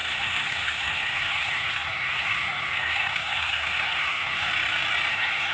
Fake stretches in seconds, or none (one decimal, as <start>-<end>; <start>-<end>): 0.0-4.5; 5.1-5.5